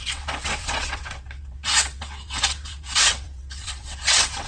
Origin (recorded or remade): remade